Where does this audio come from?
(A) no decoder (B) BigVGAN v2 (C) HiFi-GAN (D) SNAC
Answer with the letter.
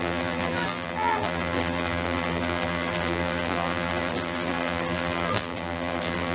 B